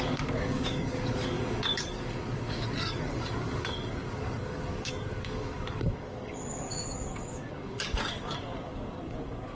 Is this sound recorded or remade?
remade